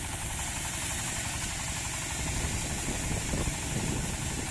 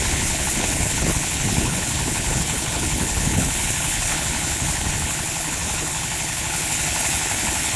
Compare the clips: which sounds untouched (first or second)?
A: first